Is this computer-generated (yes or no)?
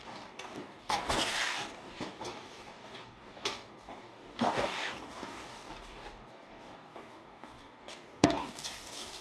yes